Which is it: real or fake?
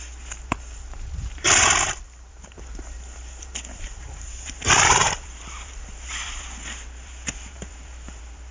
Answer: fake